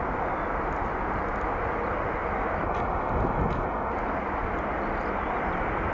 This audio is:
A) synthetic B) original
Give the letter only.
B